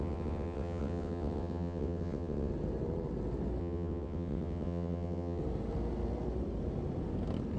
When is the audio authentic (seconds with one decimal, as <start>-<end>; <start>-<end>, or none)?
2.5-3.6; 5.4-7.6